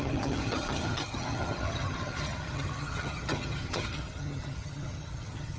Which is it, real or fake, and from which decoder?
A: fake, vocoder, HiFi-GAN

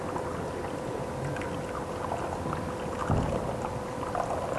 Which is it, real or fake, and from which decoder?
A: real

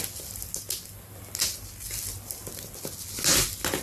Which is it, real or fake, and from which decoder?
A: real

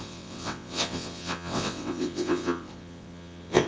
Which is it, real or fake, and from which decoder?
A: fake, vocoder, WaveNeXt